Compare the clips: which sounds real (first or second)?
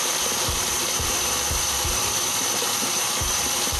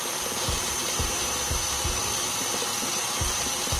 second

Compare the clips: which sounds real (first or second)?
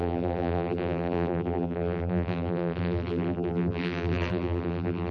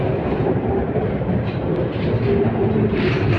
second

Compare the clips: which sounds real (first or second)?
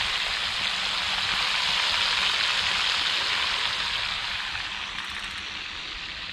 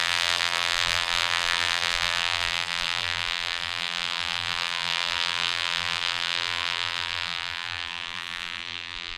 first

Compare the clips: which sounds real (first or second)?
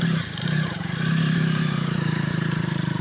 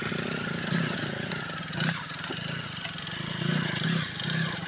second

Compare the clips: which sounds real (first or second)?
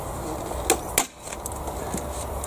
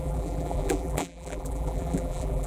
first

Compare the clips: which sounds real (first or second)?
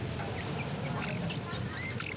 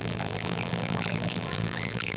first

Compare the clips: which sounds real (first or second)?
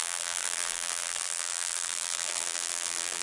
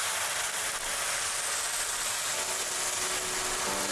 second